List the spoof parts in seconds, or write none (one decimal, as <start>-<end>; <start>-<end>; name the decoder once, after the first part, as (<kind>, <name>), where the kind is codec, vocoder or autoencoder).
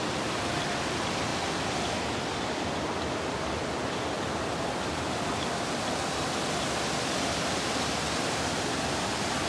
none